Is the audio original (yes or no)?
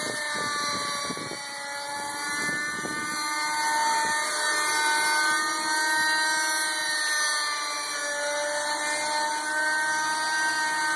yes